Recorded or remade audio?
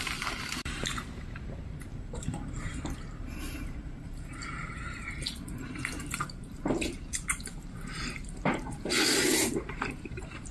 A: remade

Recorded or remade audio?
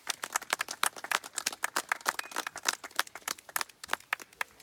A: recorded